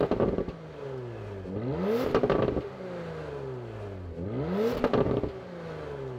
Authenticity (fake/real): real